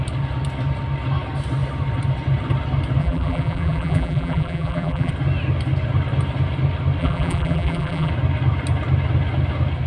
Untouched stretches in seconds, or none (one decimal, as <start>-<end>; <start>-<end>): 0.0-3.0; 5.1-7.0; 8.1-9.9